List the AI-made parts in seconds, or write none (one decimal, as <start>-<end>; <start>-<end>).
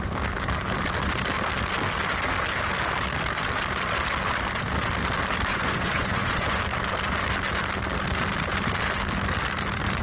5.5-6.6